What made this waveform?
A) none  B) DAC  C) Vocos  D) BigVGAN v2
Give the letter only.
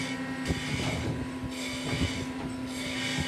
A